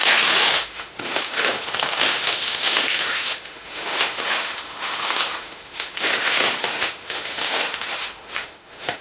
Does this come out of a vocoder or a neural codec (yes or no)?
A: yes